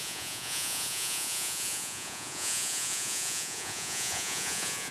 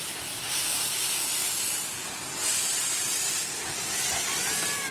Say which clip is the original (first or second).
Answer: second